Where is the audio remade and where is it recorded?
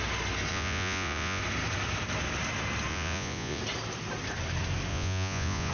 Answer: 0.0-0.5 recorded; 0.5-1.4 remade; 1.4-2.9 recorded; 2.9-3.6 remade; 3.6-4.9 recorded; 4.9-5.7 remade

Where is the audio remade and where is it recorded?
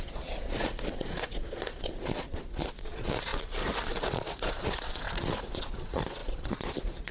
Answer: 0.0-3.3 remade; 3.3-4.1 recorded; 4.1-7.1 remade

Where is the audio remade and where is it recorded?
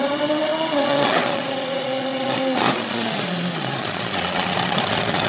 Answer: 0.0-5.3 remade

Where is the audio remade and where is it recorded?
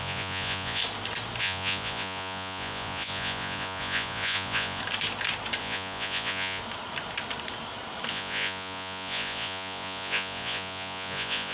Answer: 0.0-0.8 remade; 0.8-1.4 recorded; 1.4-4.8 remade; 4.8-5.6 recorded; 5.6-6.6 remade; 6.6-8.1 recorded; 8.1-11.5 remade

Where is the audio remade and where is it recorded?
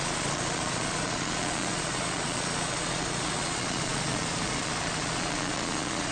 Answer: 0.0-6.1 remade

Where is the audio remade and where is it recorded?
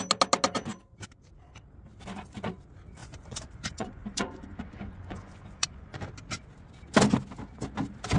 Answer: 0.0-3.0 recorded; 3.0-6.1 remade; 6.1-8.2 recorded